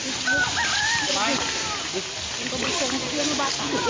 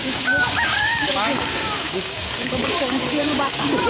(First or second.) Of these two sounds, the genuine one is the first